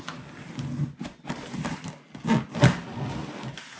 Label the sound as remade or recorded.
recorded